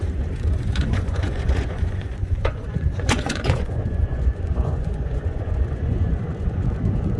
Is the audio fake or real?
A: fake